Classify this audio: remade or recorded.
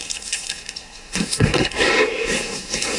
remade